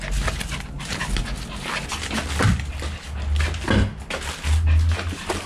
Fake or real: real